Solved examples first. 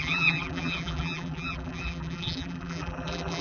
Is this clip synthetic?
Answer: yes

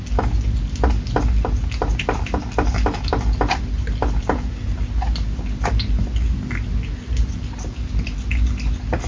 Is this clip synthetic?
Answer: no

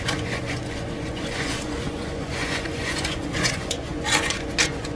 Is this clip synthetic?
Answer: yes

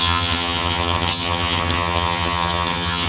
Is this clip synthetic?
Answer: yes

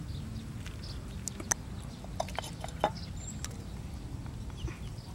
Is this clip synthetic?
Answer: no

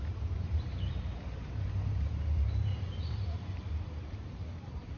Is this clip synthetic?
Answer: yes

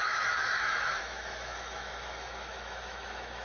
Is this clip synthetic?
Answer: yes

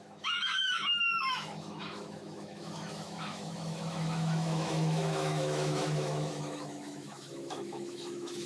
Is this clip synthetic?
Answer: yes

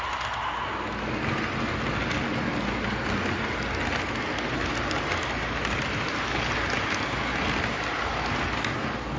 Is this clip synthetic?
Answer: no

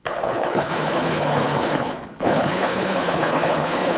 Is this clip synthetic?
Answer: yes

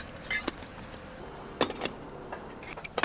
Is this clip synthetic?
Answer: no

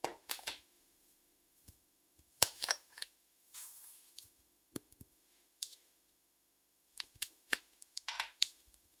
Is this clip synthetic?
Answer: yes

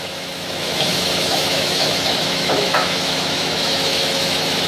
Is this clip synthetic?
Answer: yes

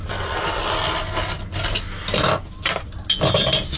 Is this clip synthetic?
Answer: no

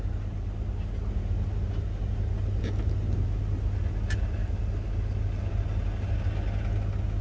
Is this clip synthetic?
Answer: no